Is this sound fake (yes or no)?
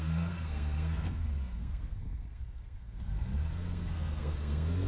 yes